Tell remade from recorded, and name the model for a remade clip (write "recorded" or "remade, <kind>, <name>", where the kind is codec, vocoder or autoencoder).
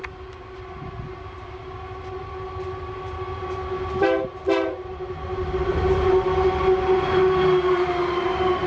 recorded